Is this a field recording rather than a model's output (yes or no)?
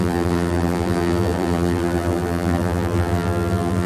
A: no